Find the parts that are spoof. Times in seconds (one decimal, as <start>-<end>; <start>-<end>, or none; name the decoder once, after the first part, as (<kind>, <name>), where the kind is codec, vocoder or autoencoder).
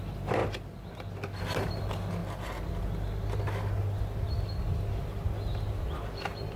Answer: 0.0-0.4 (vocoder, BigVGAN v2); 1.4-2.2